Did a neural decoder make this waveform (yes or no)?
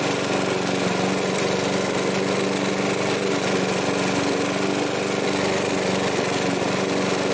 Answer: no